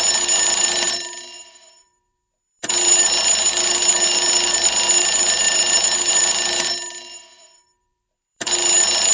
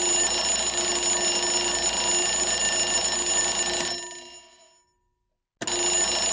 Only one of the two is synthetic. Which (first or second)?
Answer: first